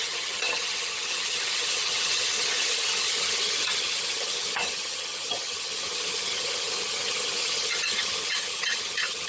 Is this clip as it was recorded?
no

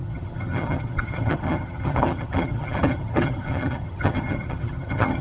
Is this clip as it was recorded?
no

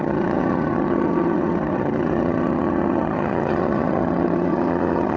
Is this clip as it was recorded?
no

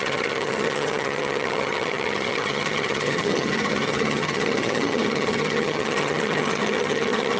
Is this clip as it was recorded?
no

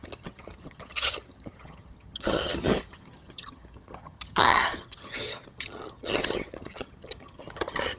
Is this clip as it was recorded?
no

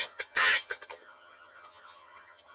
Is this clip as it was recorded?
no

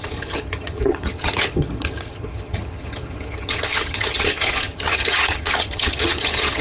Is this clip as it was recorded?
no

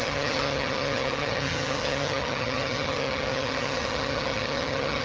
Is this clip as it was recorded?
no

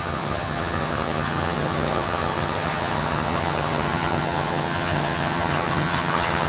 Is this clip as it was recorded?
no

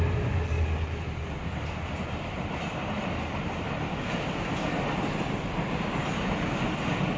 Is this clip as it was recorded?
yes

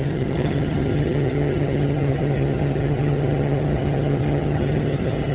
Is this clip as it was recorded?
no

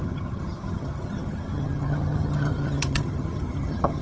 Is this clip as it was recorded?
no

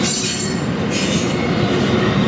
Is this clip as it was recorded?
yes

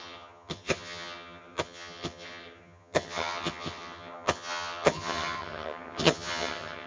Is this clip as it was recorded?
no